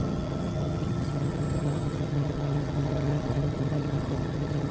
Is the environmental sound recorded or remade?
remade